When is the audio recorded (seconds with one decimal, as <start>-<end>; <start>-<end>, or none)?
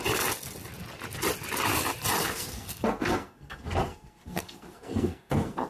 0.0-2.2